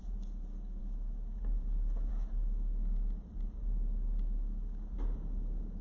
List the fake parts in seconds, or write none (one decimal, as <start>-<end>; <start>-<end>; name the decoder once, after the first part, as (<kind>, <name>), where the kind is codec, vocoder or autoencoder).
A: none